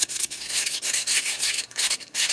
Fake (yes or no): yes